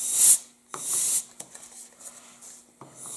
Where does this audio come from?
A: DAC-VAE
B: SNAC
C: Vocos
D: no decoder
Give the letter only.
D